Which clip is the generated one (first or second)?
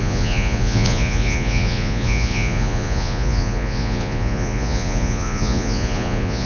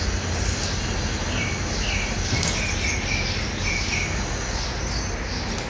first